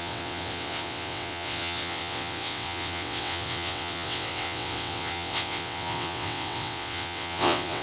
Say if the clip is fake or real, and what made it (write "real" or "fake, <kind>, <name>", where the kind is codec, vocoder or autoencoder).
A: fake, vocoder, WaveNeXt